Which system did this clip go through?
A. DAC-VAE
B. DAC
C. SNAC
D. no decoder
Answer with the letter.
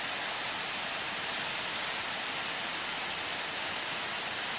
D